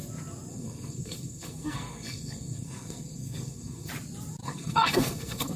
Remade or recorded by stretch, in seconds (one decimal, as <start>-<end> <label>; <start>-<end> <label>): 0.0-0.5 recorded; 0.5-3.9 remade; 3.9-4.4 recorded; 4.4-5.6 remade